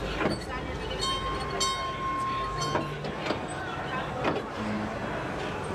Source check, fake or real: real